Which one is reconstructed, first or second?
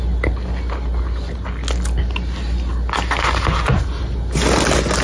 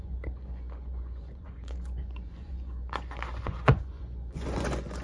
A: second